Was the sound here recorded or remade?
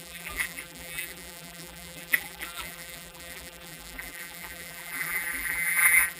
remade